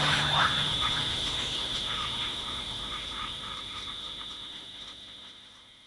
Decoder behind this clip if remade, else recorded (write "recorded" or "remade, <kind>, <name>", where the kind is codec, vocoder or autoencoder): remade, autoencoder, DAC-VAE